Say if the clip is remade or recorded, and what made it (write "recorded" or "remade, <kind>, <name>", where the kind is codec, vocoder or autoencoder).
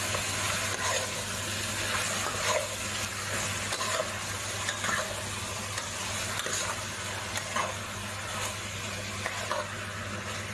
recorded